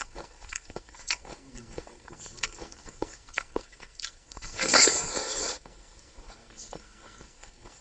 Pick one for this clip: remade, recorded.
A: remade